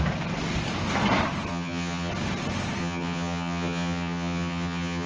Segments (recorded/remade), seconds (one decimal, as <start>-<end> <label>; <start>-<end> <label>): 0.0-1.5 recorded; 1.5-2.1 remade; 2.1-2.8 recorded; 2.8-5.1 remade